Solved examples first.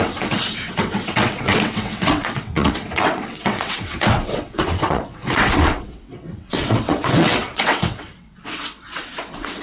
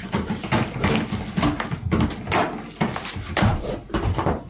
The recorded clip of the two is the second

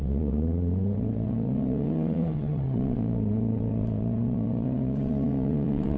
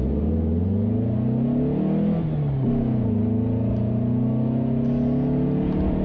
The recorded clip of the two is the second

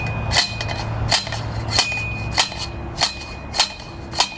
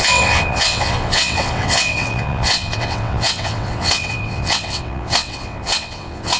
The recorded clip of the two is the first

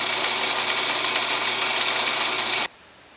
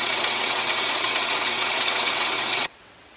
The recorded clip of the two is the first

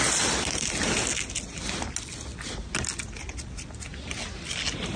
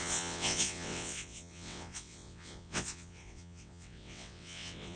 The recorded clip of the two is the first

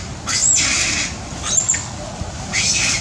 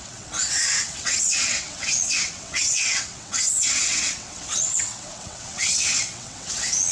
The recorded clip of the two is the first